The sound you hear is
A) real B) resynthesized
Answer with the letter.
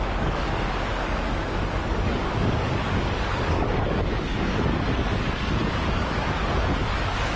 B